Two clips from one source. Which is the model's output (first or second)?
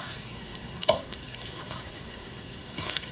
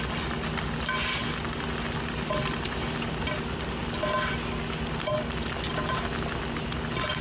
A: first